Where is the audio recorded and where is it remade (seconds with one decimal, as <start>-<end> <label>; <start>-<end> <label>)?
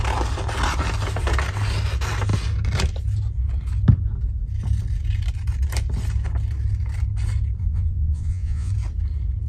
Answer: 0.0-7.6 recorded; 7.6-8.7 remade; 8.7-9.5 recorded